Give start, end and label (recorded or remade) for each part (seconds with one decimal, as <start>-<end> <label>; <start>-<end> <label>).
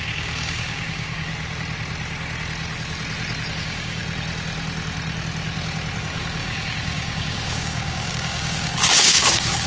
0.0-1.3 remade; 1.3-3.5 recorded; 3.5-4.0 remade; 4.0-6.0 recorded; 6.0-9.7 remade